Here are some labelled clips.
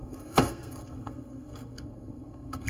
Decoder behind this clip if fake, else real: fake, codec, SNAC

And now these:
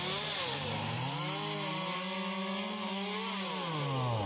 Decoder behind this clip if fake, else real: real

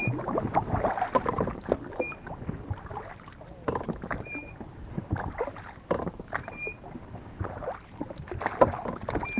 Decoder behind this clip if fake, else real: real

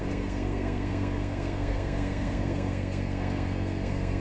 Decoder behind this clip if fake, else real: fake, codec, SNAC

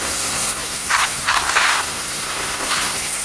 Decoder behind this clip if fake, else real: fake, codec, SNAC